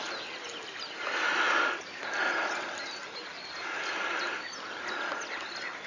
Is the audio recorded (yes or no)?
yes